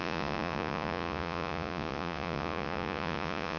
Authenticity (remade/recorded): remade